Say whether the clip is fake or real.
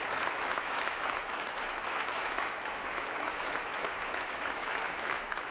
fake